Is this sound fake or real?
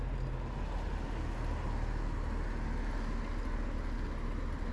real